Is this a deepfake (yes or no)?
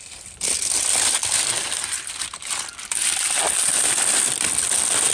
no